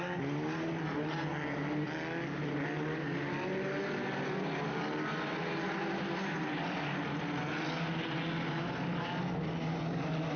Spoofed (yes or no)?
no